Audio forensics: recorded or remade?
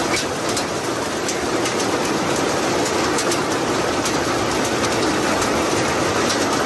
recorded